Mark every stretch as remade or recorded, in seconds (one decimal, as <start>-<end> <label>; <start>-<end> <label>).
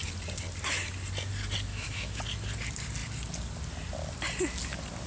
0.0-1.7 recorded; 1.7-2.2 remade; 2.2-5.1 recorded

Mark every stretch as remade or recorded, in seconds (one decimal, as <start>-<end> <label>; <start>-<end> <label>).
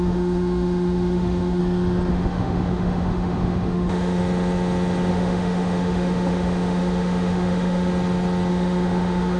0.0-1.6 remade; 1.6-2.1 recorded; 2.1-4.2 remade; 4.2-5.1 recorded; 5.1-7.9 remade; 7.9-8.5 recorded; 8.5-9.4 remade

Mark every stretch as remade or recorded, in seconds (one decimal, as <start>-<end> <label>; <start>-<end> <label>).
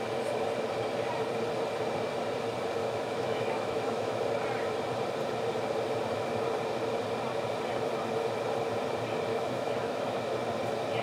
0.0-2.8 recorded; 2.8-4.2 remade; 4.2-9.3 recorded; 9.3-10.2 remade; 10.2-11.0 recorded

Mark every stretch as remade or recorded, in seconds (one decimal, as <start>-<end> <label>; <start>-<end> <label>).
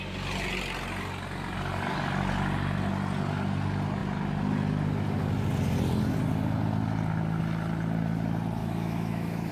0.0-8.6 recorded; 8.6-9.5 remade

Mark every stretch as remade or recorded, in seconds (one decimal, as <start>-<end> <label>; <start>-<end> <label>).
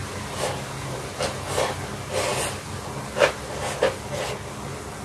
0.0-5.0 recorded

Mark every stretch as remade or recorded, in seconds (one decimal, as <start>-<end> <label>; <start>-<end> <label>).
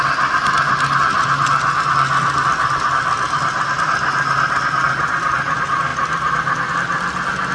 0.0-7.5 recorded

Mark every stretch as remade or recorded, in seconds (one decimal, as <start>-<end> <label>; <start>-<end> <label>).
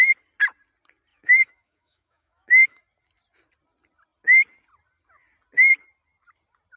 0.0-1.1 recorded; 1.1-2.8 remade; 2.8-6.8 recorded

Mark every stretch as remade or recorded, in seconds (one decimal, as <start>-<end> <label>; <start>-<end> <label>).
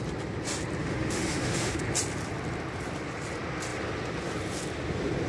0.0-0.8 recorded; 0.8-1.8 remade; 1.8-5.3 recorded